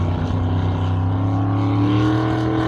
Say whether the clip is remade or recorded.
recorded